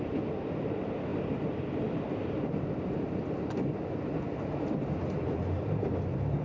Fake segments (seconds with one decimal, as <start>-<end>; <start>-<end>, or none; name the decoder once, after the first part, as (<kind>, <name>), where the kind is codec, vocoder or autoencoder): 1.1-1.7 (vocoder, BigVGAN v2)